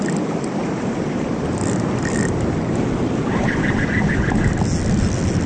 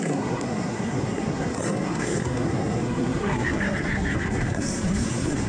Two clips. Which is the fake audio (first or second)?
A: second